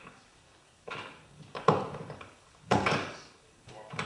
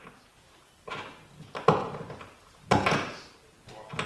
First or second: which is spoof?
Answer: first